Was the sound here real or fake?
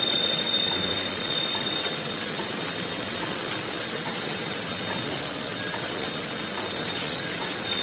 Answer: fake